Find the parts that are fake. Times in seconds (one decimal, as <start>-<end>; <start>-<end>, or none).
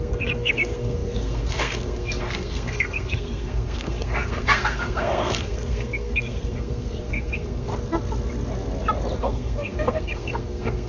0.0-7.7; 9.2-10.9